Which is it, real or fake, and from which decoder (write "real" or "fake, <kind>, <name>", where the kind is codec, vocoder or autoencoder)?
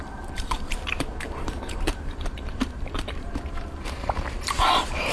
fake, vocoder, BigVGAN v2